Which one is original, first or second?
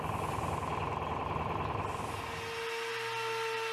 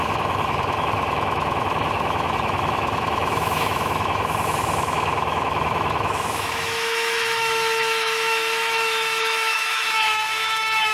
first